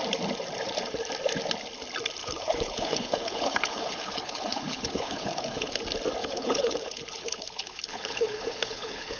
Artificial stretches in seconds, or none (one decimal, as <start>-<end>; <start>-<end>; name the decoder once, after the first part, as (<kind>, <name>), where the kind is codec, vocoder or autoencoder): 2.2-5.8 (codec, HILCodec); 6.2-9.2